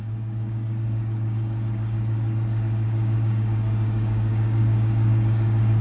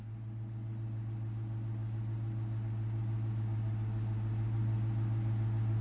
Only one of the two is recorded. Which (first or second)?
second